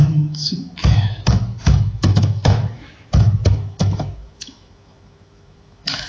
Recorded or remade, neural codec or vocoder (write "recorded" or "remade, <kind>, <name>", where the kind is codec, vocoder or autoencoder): remade, autoencoder, DAC-VAE